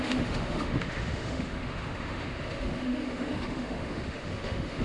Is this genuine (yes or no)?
no